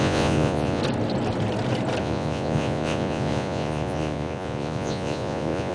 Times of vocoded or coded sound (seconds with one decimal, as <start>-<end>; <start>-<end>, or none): 0.0-0.8; 2.0-5.7